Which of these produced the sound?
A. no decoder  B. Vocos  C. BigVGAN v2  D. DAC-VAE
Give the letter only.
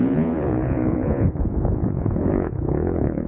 B